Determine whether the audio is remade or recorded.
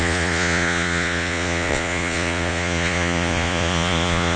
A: remade